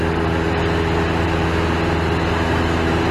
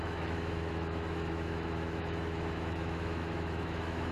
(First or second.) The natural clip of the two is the first